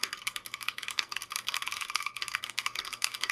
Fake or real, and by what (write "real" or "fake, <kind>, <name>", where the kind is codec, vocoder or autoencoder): fake, codec, SNAC